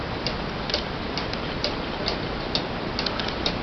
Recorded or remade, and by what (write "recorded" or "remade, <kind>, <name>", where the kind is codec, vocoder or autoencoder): recorded